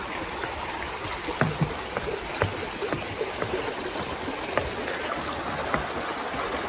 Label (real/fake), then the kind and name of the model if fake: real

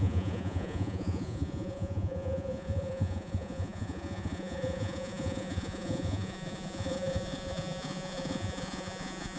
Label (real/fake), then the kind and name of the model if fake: fake, vocoder, Vocos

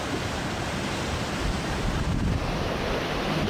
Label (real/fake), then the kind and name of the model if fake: real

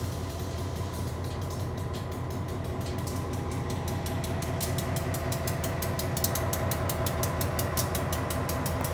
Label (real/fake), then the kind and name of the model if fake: real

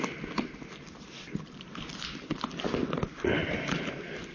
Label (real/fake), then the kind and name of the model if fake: real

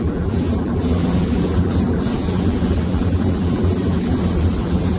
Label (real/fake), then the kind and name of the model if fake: fake, vocoder, BigVGAN v2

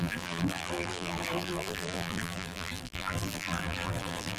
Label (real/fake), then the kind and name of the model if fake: fake, vocoder, BigVGAN v2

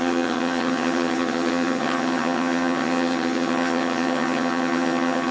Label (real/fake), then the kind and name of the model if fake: fake, vocoder, HiFi-GAN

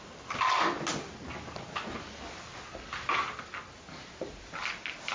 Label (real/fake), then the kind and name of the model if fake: real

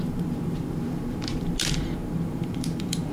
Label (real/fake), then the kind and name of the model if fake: fake, vocoder, BigVGAN v2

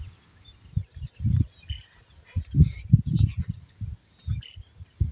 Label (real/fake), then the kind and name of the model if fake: real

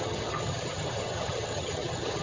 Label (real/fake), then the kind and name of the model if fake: fake, vocoder, HiFi-GAN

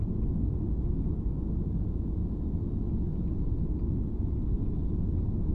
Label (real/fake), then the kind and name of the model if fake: real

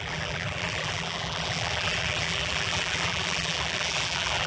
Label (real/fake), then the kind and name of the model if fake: fake, vocoder, BigVGAN v2